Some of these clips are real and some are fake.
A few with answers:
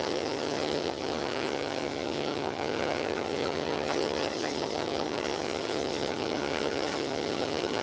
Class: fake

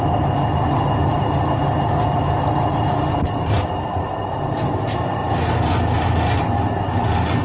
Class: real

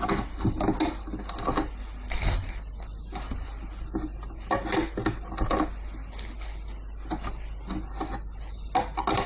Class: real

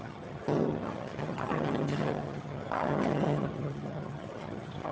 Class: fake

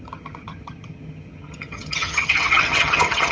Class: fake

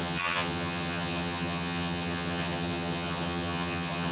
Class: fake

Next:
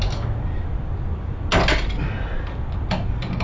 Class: real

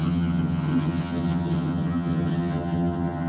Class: fake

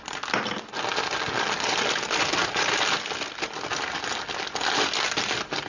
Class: real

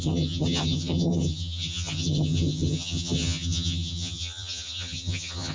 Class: fake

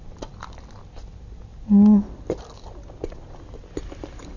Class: real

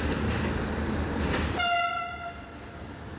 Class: real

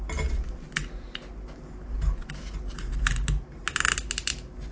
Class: real